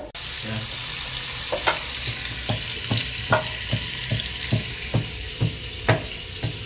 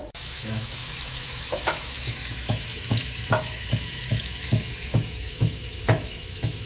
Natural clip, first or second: first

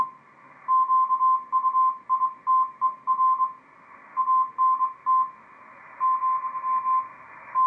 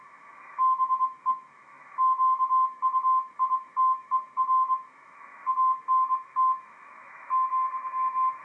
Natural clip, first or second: first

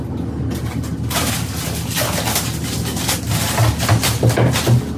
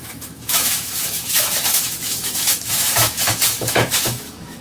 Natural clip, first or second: first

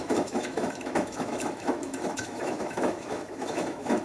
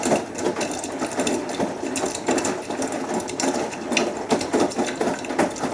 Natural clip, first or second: second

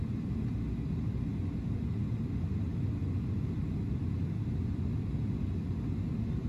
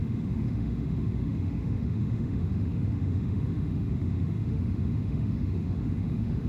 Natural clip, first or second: first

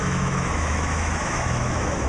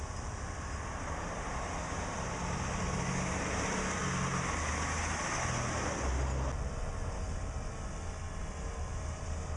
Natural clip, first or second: second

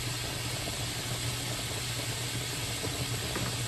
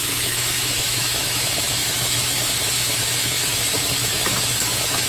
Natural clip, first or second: first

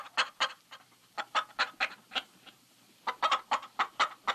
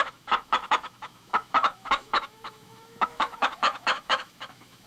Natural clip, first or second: first